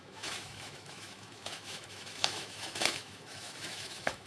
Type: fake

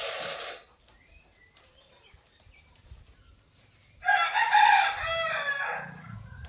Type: fake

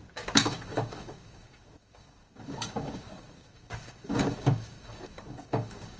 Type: fake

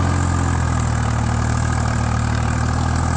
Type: real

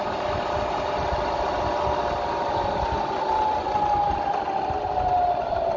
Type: real